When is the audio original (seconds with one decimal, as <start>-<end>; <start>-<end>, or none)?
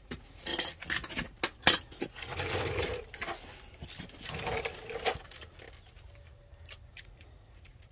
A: 0.5-1.7; 2.3-6.9